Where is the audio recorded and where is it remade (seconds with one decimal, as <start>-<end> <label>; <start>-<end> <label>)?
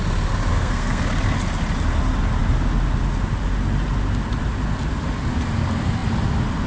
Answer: 0.0-0.5 recorded; 0.5-1.0 remade; 1.0-6.7 recorded